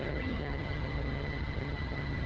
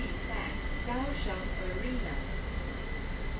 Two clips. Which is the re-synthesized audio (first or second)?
first